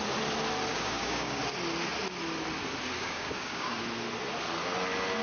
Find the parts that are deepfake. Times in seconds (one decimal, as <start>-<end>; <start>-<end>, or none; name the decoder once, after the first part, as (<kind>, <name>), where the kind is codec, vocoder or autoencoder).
0.7-1.4 (codec, DAC); 3.0-3.8